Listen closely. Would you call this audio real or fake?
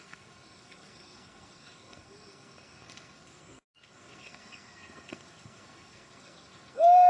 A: fake